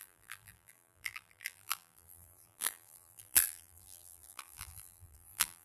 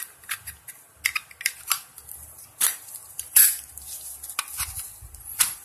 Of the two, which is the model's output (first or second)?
first